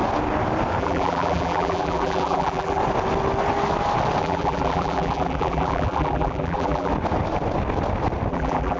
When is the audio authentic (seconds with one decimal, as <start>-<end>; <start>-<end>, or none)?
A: 0.0-0.8; 2.8-4.2; 6.9-8.3